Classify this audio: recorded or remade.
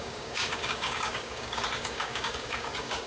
remade